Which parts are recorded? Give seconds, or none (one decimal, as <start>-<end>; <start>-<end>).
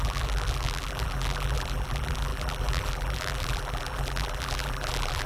none